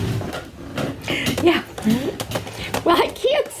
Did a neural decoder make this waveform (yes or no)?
no